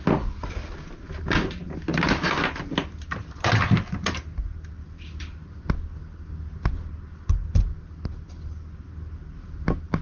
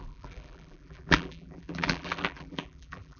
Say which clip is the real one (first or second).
first